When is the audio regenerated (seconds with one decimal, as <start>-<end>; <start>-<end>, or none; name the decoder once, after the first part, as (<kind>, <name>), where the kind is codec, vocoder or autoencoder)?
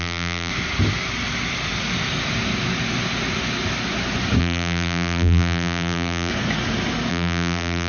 0.0-0.5 (vocoder, BigVGAN v2); 4.4-6.3; 7.1-7.9